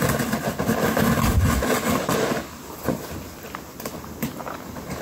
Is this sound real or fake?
real